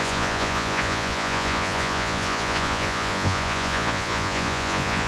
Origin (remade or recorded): remade